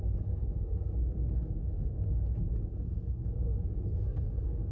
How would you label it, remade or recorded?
remade